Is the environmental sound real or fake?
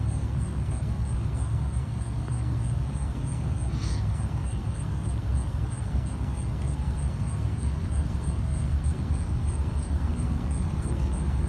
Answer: fake